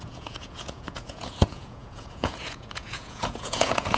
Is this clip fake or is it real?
fake